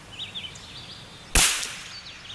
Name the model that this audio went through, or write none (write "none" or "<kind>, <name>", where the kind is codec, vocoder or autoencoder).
none